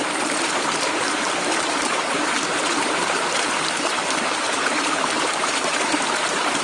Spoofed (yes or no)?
yes